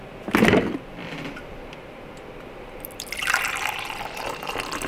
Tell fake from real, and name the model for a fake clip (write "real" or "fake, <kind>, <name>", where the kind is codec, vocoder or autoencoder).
fake, vocoder, BigVGAN v2